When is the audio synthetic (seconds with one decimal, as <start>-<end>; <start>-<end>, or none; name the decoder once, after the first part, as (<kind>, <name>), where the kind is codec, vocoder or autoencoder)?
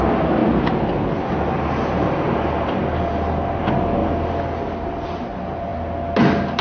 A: none